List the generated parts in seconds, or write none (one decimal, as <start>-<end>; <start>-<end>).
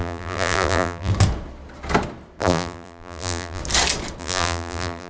0.0-1.1; 2.4-3.6; 4.2-5.1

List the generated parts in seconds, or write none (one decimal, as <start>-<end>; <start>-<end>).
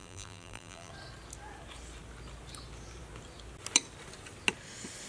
0.0-0.9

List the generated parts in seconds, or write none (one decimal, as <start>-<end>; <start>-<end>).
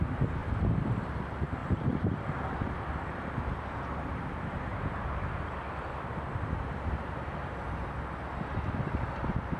0.4-1.2; 1.6-2.1; 4.7-5.6